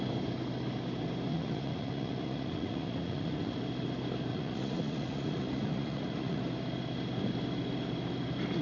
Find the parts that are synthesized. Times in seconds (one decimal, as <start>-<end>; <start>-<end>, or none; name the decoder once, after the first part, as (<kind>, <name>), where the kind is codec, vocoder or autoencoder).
1.3-3.6 (vocoder, Vocos); 4.3-6.4